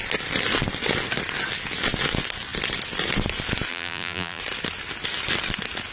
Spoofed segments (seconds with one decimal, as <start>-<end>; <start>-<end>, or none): 3.7-4.4

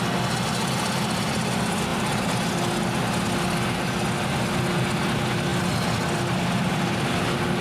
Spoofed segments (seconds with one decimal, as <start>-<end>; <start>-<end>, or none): 1.9-2.5

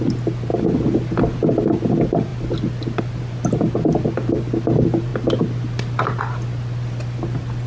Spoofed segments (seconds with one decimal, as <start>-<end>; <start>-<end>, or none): none

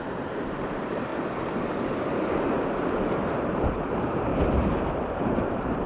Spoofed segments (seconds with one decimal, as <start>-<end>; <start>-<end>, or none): 0.0-1.1; 3.5-5.9